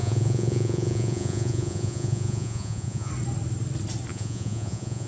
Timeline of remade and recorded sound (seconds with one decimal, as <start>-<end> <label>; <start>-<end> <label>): 0.0-3.1 remade; 3.1-4.1 recorded; 4.1-5.1 remade